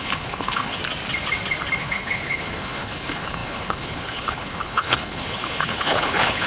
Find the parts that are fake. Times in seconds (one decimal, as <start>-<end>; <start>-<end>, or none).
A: 0.0-0.8; 1.8-6.5